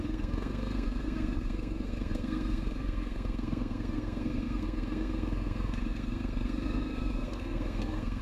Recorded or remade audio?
remade